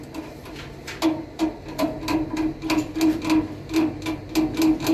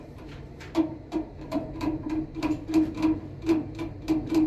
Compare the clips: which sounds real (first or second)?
first